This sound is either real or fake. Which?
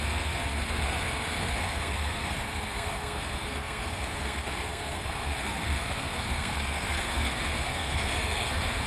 fake